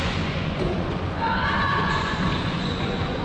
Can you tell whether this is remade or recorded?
remade